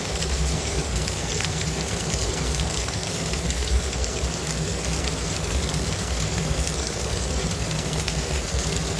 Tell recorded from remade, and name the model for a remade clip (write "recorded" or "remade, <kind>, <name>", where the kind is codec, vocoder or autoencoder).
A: remade, codec, SNAC